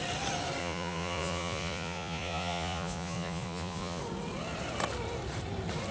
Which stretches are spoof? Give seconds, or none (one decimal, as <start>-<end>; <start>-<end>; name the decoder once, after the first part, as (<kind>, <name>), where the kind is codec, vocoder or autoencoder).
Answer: 0.6-4.0 (vocoder, Vocos)